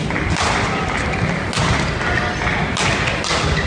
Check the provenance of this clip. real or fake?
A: real